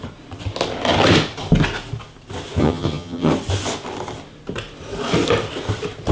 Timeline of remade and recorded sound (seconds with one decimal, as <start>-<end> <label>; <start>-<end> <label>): 0.0-2.6 recorded; 2.6-3.3 remade; 3.3-6.1 recorded